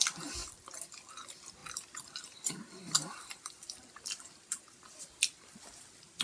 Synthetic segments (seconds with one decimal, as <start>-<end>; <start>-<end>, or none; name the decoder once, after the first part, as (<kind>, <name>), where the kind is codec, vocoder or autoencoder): 0.0-6.2 (vocoder, BigVGAN v2)